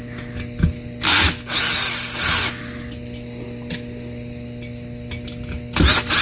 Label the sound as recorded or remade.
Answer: recorded